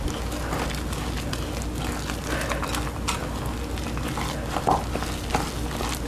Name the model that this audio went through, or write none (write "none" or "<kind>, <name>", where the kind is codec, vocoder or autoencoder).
none